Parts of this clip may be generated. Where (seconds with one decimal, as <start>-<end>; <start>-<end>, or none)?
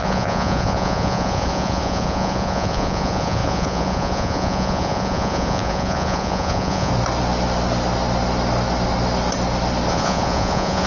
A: 0.0-6.9; 9.9-10.9